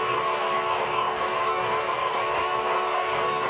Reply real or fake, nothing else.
fake